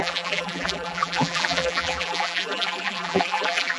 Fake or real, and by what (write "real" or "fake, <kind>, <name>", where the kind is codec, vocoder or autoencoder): fake, vocoder, BigVGAN v2